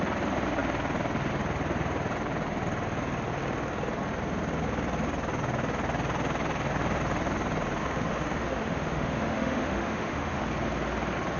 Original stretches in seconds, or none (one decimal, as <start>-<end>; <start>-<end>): 0.0-7.8; 10.4-11.4